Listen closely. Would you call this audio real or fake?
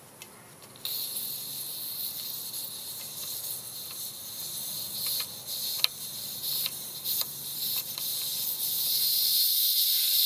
real